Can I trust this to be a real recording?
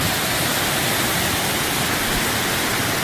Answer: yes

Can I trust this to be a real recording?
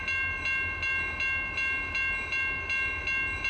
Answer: yes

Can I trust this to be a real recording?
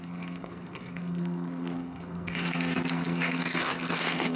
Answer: no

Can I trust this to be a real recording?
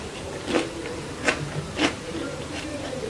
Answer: no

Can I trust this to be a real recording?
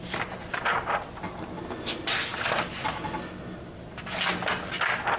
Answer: yes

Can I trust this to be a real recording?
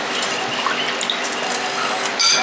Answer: yes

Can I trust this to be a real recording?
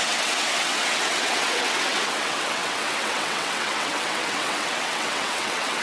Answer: no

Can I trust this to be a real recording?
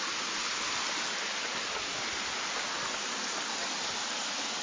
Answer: yes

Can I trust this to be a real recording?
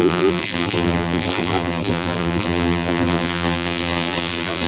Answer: no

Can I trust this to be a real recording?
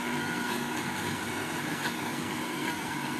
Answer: no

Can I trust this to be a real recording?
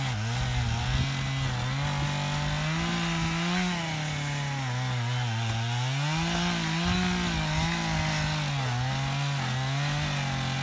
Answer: yes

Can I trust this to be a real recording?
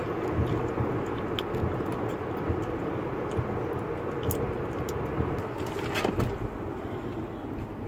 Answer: yes